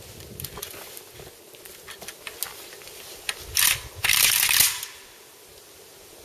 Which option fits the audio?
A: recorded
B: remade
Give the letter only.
A